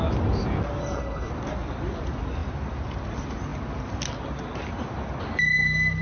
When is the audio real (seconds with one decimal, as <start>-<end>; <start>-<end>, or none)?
0.0-0.8; 1.3-6.0